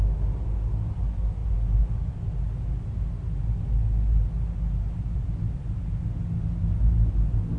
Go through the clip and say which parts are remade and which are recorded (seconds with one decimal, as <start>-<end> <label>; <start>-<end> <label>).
0.0-7.6 recorded